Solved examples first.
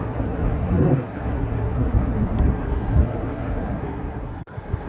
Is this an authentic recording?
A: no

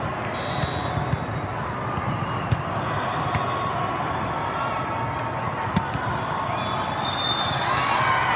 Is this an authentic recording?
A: yes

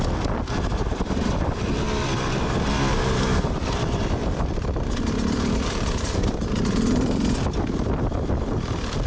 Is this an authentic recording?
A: no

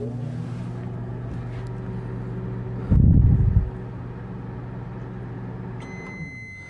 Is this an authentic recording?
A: yes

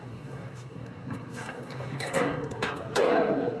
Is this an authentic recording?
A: no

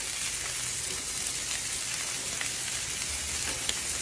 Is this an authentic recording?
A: yes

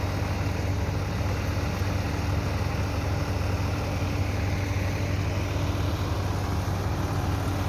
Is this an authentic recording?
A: yes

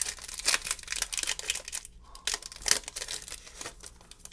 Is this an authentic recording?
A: yes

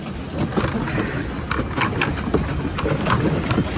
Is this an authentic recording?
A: yes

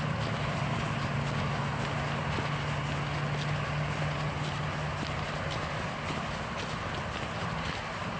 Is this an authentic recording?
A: yes